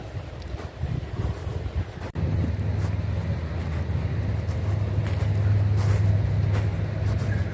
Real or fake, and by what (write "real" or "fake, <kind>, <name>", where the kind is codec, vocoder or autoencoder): real